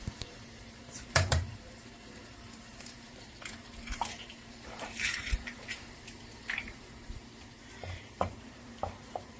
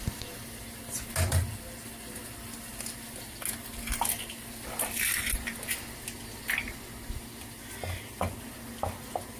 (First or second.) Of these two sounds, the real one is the second